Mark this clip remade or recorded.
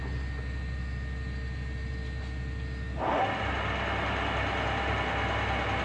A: recorded